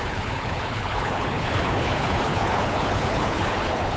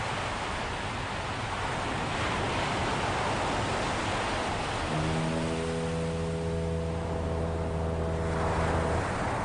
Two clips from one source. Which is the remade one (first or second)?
first